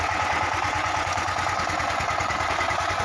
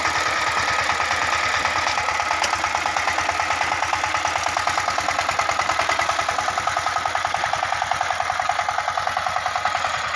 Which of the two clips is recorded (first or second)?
second